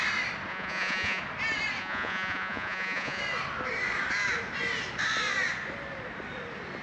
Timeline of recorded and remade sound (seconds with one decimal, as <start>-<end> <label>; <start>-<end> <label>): 0.0-0.5 recorded; 0.5-1.2 remade; 1.2-1.8 recorded; 1.8-3.2 remade; 3.2-6.8 recorded